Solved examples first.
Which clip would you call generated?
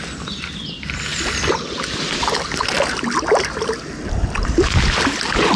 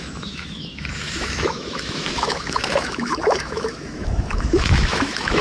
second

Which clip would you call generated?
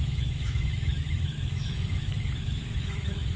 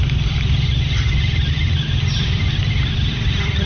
first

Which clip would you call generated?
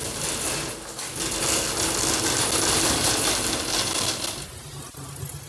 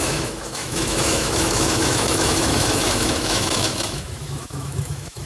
second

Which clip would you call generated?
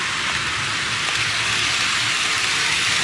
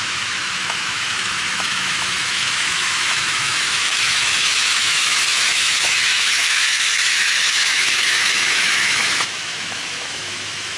second